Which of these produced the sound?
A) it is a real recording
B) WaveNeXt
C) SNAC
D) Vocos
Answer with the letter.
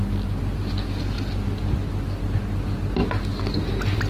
A